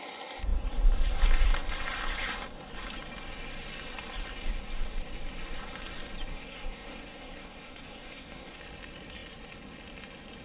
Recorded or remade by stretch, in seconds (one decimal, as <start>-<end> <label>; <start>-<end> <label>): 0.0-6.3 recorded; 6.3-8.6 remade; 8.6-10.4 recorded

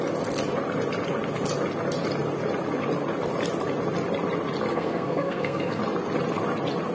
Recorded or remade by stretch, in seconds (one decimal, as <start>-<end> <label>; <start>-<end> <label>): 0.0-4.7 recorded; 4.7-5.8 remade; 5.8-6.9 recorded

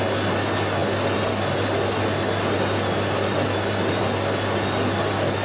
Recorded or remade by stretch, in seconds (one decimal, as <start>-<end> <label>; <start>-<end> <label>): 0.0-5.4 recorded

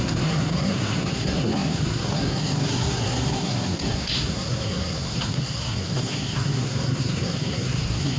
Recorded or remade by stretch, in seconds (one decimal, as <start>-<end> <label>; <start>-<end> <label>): 0.0-8.2 remade